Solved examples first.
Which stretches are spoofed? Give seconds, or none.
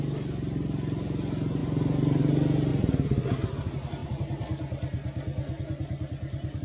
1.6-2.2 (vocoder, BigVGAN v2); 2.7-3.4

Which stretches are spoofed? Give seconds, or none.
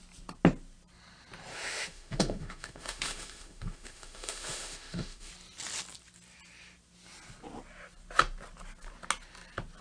1.5-5.3 (autoencoder, DAC-VAE)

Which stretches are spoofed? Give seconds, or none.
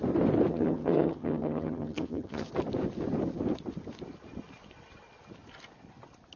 0.5-2.5 (vocoder, HiFi-GAN)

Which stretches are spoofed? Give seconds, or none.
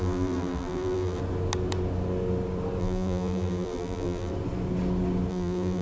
0.0-1.2 (vocoder, BigVGAN v2); 2.8-4.3; 5.3-5.8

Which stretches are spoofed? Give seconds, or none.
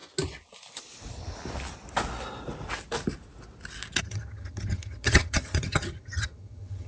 4.0-6.9 (vocoder, HiFi-GAN)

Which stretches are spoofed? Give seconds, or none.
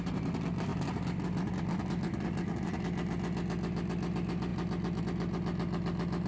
none